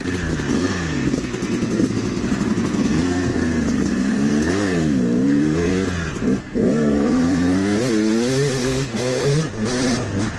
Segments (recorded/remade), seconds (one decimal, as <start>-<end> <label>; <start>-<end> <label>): 0.0-0.5 recorded; 0.5-5.7 remade; 5.7-6.2 recorded; 6.2-7.8 remade; 7.8-8.6 recorded; 8.6-9.3 remade; 9.3-10.4 recorded